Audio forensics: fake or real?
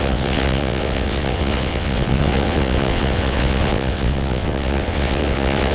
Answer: fake